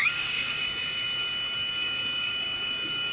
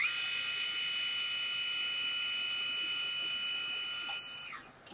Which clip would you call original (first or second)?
second